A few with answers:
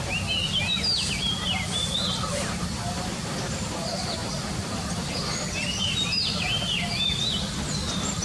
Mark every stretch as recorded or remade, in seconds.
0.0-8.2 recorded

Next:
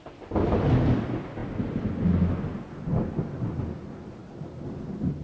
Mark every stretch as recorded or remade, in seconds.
0.0-5.2 recorded

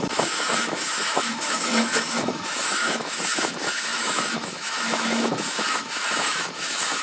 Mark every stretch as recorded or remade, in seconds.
0.0-7.0 remade

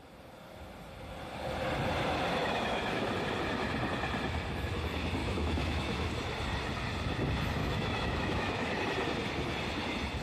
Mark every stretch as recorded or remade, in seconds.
0.0-2.4 recorded; 2.4-3.1 remade; 3.1-5.2 recorded; 5.2-6.1 remade; 6.1-7.6 recorded; 7.6-8.7 remade; 8.7-10.2 recorded

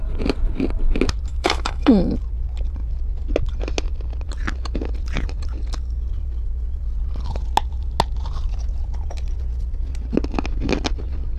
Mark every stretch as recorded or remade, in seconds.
0.0-1.3 recorded; 1.3-2.1 remade; 2.1-11.4 recorded